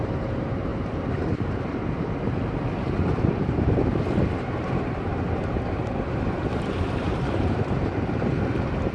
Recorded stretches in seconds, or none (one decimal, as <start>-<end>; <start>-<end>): 7.9-8.5